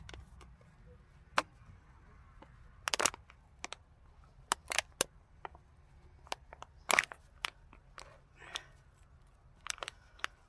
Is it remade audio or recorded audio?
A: recorded